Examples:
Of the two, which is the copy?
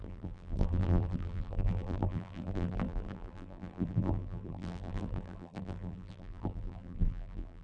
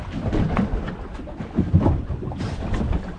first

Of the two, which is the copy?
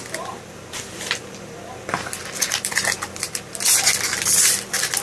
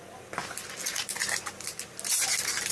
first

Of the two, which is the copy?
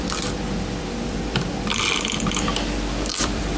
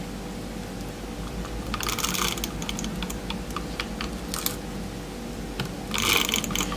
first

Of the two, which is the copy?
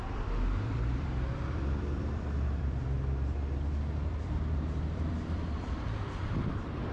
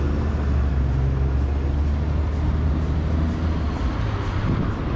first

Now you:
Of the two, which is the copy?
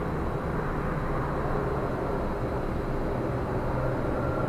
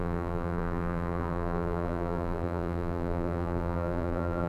second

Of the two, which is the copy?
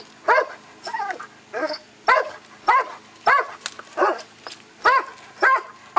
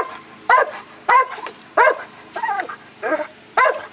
second